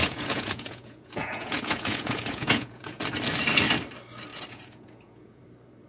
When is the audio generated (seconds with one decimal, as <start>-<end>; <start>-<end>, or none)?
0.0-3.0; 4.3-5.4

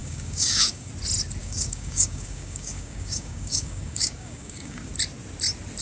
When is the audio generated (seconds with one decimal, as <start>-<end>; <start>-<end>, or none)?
0.0-0.9; 1.4-4.9

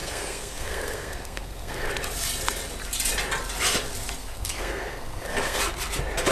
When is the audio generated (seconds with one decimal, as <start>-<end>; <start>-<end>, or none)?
0.0-1.9; 4.2-5.6

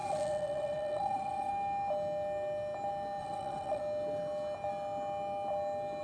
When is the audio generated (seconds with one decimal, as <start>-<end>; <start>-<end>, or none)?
0.0-1.5; 3.2-3.8

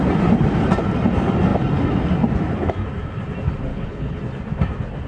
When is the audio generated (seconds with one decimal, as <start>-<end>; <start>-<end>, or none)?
3.7-4.2

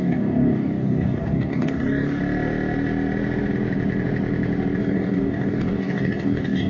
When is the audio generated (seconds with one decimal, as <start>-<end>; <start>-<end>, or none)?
0.0-2.2; 4.8-6.7

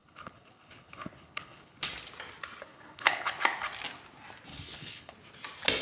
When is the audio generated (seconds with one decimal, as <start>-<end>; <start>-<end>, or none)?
0.0-1.9; 2.7-3.3; 4.5-5.1